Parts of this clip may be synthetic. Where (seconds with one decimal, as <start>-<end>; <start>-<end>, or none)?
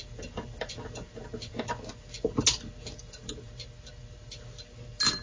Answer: none